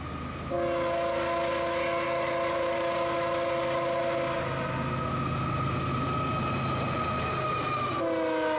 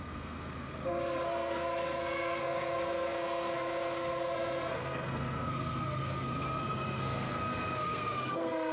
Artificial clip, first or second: second